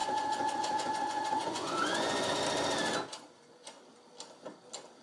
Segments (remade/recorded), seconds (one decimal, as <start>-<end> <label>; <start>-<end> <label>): 0.0-2.3 remade; 2.3-3.1 recorded; 3.1-3.8 remade; 3.8-5.0 recorded